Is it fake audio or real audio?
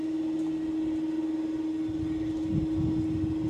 real